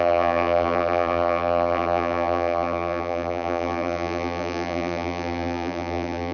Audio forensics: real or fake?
fake